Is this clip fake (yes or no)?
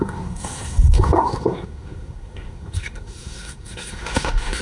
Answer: yes